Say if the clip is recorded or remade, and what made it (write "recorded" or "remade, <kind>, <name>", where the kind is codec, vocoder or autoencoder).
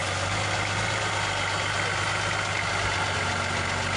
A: recorded